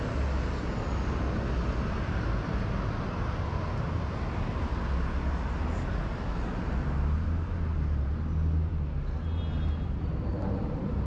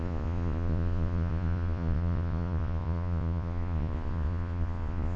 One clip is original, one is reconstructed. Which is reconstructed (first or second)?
second